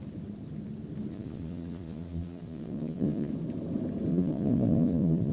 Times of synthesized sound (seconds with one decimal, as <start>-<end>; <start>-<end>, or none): 1.1-3.3; 4.1-5.3